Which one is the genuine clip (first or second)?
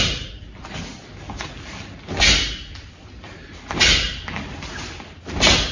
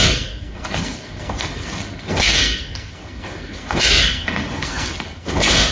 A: first